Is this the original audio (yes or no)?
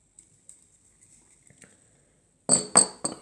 yes